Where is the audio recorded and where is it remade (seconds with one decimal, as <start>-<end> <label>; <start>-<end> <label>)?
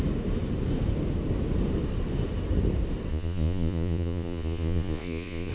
0.0-3.1 recorded; 3.1-5.5 remade